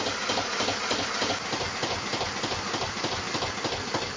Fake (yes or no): no